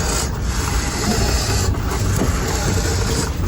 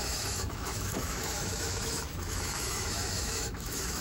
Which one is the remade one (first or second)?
second